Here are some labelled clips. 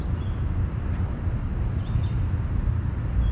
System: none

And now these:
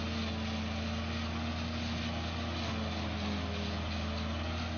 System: none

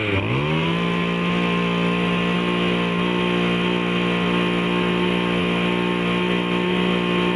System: none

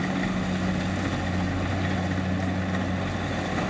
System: none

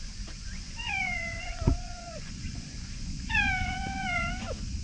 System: vocoder, Vocos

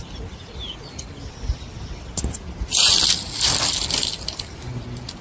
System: none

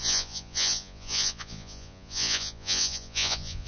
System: vocoder, Vocos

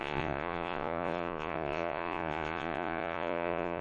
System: vocoder, Vocos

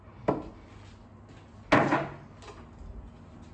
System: none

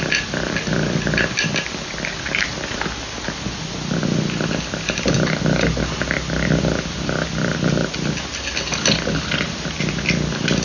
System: none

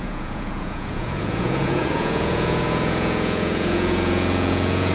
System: vocoder, Vocos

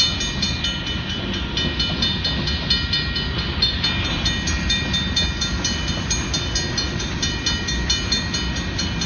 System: none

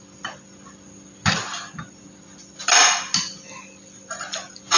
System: none